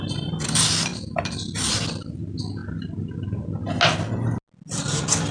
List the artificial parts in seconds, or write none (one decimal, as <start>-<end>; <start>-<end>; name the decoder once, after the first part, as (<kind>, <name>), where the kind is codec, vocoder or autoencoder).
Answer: 0.9-1.7 (vocoder, BigVGAN v2)